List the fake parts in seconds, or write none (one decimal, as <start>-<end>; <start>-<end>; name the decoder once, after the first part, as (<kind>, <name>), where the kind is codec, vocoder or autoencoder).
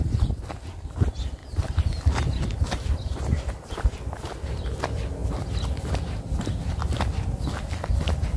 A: 1.4-4.8 (vocoder, BigVGAN v2)